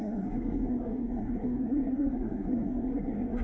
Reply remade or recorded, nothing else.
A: remade